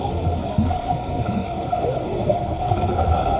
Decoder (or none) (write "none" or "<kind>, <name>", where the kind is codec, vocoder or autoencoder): codec, SNAC